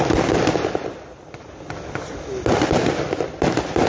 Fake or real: real